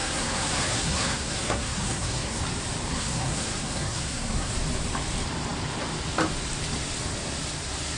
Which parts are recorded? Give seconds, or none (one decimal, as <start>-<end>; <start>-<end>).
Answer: 2.4-2.9; 4.5-8.0

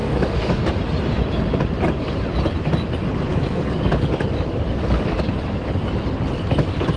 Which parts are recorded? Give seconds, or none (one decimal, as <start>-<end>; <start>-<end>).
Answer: 0.8-3.3; 5.8-7.0